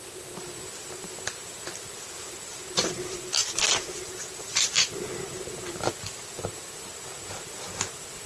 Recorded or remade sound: remade